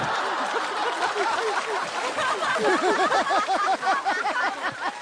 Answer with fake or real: real